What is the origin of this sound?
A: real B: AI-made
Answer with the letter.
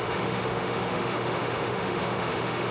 B